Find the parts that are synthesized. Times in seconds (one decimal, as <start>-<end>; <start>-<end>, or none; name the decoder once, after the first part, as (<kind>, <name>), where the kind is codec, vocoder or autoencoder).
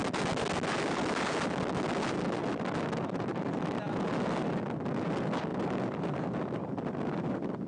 none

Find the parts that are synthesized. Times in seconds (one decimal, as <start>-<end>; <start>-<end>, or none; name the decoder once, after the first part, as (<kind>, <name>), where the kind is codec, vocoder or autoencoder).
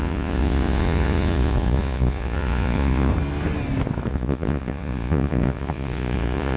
0.0-3.1 (vocoder, Vocos); 4.1-6.6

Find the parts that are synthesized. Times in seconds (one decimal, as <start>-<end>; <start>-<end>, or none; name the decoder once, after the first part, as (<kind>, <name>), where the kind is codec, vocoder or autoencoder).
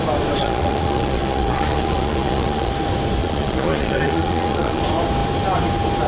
0.4-2.7 (vocoder, Vocos); 3.2-4.8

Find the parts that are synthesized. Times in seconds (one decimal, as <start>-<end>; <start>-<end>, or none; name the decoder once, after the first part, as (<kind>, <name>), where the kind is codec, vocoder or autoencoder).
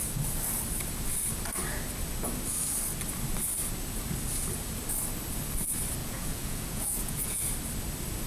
6.0-7.4 (vocoder, Vocos)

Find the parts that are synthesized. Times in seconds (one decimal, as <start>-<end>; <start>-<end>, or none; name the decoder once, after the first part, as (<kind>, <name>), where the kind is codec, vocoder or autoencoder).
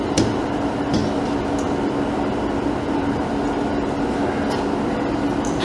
none